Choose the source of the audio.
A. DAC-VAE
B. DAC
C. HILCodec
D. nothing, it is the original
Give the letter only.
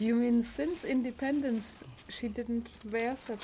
D